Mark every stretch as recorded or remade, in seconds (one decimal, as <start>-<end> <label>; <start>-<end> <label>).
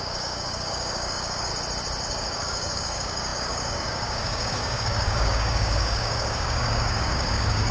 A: 0.0-1.5 remade; 1.5-2.0 recorded; 2.0-7.7 remade